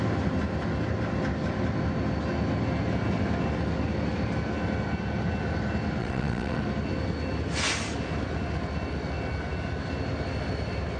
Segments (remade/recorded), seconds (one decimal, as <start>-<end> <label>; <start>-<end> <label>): 0.0-6.0 recorded; 6.0-6.6 remade; 6.6-11.0 recorded